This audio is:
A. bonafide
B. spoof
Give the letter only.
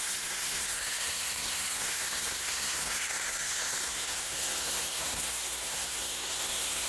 B